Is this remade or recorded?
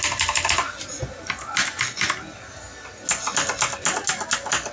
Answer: recorded